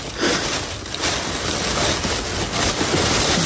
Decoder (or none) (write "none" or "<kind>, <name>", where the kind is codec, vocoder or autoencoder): none